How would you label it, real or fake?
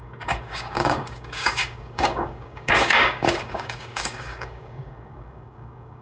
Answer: fake